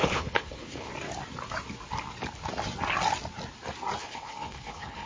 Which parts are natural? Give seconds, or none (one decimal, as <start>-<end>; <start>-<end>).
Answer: 0.9-4.0